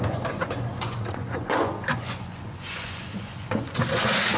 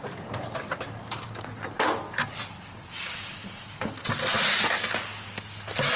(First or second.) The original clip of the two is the second